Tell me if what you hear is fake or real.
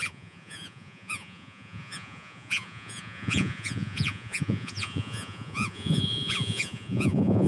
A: fake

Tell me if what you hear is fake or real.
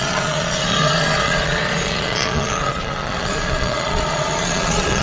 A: fake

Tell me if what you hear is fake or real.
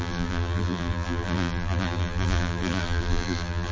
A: fake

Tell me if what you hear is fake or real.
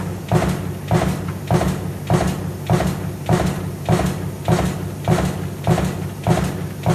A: real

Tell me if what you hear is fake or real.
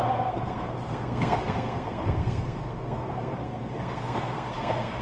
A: fake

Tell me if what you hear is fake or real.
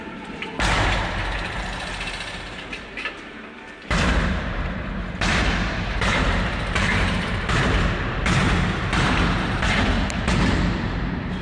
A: fake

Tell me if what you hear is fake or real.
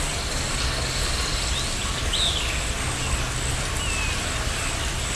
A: real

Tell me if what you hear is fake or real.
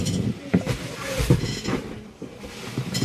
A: fake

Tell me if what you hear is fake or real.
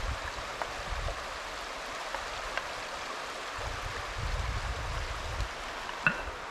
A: real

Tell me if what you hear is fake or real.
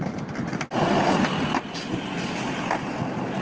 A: real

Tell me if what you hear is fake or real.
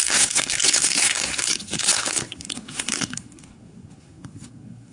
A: fake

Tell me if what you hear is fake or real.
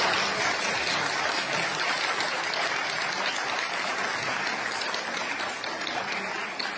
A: real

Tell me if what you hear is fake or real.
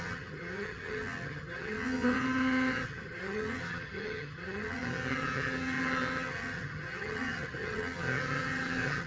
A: fake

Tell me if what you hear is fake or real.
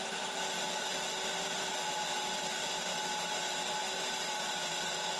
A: real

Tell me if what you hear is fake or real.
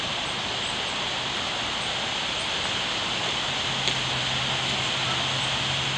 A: real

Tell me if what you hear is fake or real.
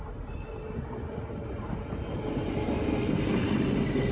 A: real